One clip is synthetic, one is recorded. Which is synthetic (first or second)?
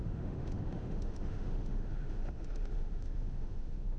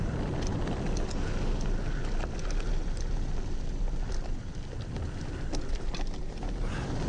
first